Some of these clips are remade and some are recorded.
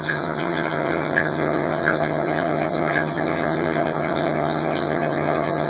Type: remade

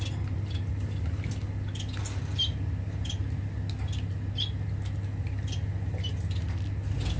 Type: recorded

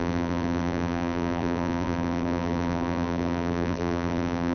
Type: remade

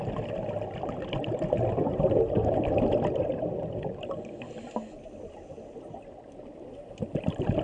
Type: recorded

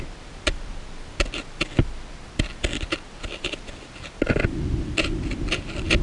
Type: recorded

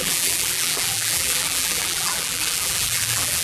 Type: remade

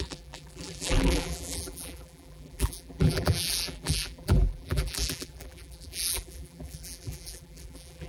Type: remade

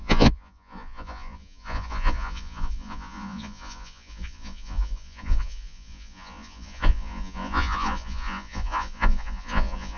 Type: remade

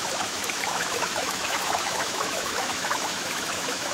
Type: remade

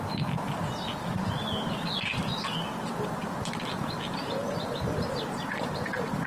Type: recorded